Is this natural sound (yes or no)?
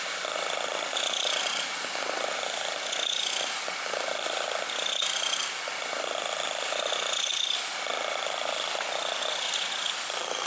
yes